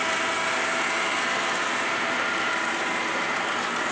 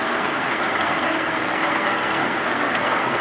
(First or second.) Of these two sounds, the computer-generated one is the second